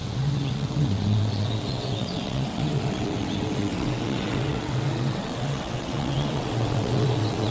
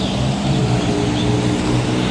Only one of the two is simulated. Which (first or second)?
first